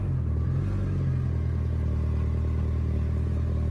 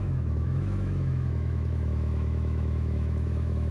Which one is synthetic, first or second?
second